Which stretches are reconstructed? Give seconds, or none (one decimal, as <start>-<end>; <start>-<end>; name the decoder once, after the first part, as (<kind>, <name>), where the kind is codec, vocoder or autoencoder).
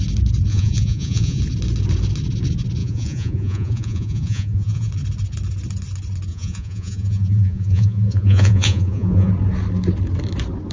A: 0.5-1.4 (vocoder, Vocos); 2.8-4.9; 6.3-9.3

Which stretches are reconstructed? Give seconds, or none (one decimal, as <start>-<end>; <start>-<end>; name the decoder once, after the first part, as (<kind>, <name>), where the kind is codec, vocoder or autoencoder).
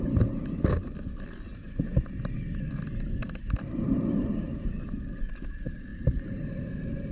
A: 1.5-4.7 (vocoder, BigVGAN v2); 5.9-6.6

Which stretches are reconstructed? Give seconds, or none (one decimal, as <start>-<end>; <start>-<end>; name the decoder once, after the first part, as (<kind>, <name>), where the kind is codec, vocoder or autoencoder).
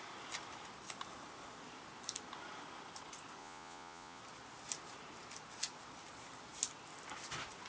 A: 3.4-4.2 (vocoder, Vocos)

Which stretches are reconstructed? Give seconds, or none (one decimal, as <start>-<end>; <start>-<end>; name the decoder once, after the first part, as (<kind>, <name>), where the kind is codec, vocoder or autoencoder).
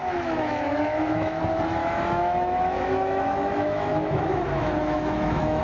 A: 0.0-1.4 (autoencoder, DAC-VAE); 1.8-5.6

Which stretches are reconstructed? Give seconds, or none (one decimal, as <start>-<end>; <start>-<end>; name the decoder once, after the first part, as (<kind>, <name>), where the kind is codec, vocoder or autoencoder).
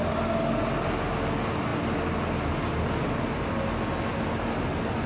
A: none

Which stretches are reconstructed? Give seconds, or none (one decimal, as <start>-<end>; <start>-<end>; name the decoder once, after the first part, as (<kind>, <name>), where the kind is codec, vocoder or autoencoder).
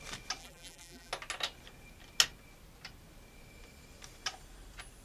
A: 0.4-1.1 (vocoder, BigVGAN v2)